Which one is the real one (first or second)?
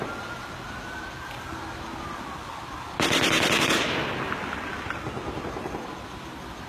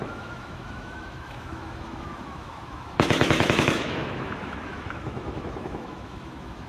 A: first